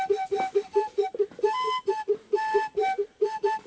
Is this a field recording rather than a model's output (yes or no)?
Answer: yes